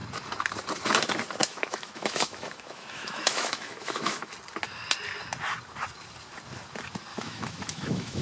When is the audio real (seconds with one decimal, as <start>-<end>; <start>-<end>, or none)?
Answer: 0.0-1.4; 4.3-7.1